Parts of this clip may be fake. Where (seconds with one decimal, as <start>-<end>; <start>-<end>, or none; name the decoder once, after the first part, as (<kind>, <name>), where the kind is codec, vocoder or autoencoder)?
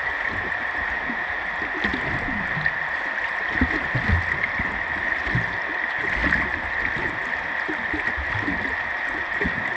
none